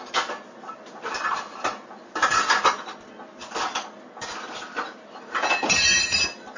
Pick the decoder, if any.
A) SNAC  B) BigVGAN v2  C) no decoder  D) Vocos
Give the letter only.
C